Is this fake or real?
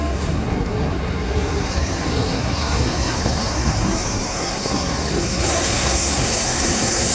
fake